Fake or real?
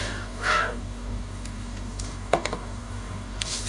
fake